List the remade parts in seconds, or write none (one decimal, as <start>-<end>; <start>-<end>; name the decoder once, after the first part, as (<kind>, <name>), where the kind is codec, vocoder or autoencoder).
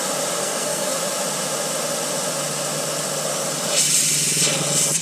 0.4-1.0 (codec, SNAC)